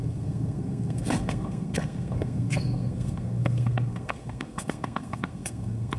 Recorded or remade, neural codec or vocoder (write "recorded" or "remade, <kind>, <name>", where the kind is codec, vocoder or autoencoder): remade, codec, SNAC